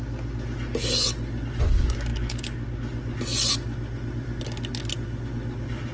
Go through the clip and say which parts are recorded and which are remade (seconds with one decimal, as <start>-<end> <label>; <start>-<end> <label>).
0.0-5.9 recorded